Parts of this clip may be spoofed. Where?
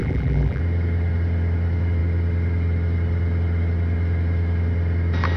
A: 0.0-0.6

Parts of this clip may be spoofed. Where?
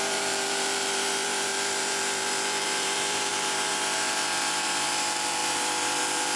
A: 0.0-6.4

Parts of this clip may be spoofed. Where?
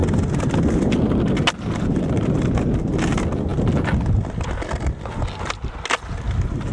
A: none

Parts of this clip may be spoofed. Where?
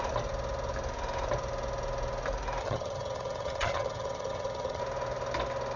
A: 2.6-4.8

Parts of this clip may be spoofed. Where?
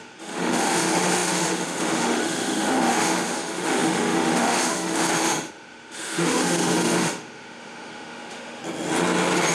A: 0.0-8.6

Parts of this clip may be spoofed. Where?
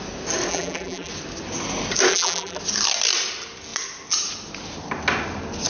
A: 0.5-1.1; 2.1-2.6